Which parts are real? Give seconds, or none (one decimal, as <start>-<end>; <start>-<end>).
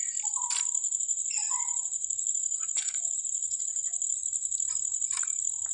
0.0-0.8; 4.2-5.7